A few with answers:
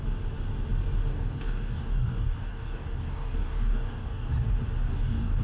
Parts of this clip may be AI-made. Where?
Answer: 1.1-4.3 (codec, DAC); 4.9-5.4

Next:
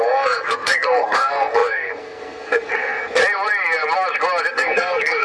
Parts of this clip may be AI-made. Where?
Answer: 0.0-3.2 (codec, SNAC); 4.5-5.2